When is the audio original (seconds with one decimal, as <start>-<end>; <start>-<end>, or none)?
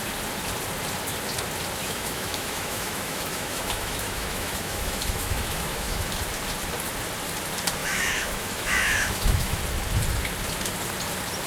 0.0-1.8; 6.1-7.8; 9.6-11.5